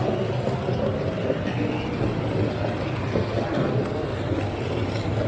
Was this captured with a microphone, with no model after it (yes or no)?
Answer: yes